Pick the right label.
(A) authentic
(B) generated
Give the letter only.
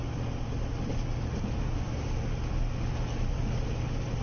A